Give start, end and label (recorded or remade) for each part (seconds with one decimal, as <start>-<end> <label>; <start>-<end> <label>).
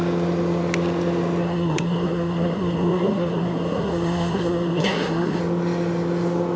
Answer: 0.0-1.4 recorded; 1.4-5.4 remade; 5.4-6.6 recorded